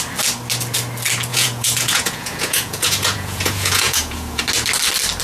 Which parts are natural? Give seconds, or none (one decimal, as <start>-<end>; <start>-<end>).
0.0-1.3; 4.4-5.2